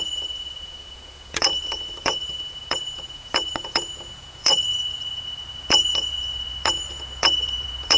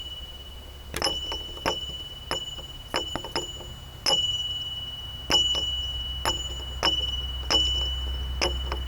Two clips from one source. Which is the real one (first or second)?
second